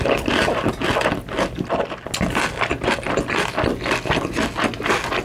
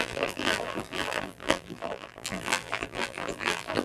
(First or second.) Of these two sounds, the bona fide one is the first